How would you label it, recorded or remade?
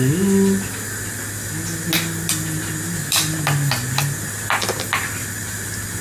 recorded